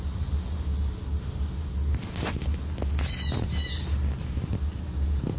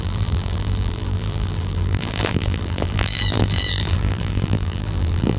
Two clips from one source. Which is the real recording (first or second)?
first